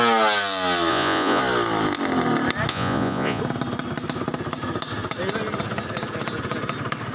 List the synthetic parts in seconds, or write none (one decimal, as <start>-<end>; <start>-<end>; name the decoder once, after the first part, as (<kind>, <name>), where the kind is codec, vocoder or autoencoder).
0.9-1.4 (vocoder, Vocos); 2.7-3.4